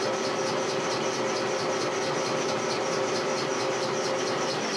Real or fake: real